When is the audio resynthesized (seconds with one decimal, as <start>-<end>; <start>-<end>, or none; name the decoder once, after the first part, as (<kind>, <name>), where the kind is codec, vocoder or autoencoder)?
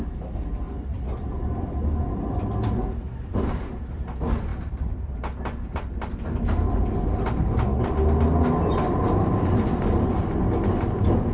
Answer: 0.9-3.9 (vocoder, BigVGAN v2); 4.5-6.9; 8.7-10.3